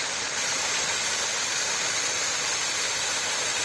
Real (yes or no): yes